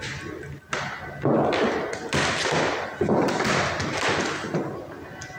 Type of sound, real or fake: real